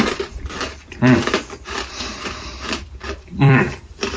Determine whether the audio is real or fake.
fake